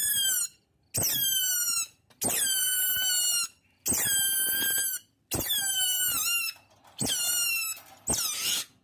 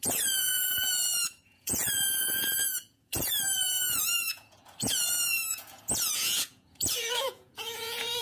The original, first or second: first